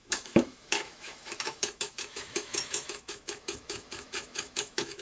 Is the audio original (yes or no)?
no